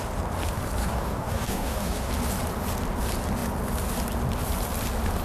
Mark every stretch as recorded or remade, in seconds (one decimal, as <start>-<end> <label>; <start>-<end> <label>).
0.0-0.8 recorded; 0.8-2.1 remade; 2.1-5.2 recorded